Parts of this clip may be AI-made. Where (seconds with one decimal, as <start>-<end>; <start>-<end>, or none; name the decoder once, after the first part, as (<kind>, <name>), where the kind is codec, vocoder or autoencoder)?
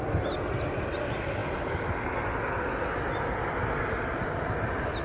none